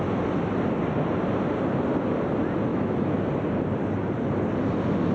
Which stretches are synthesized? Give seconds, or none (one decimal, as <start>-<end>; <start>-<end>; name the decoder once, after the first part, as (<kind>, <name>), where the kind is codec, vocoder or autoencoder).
2.7-3.2 (autoencoder, DAC-VAE)